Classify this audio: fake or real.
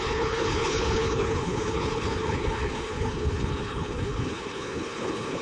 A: fake